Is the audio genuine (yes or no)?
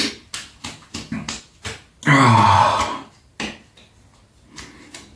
yes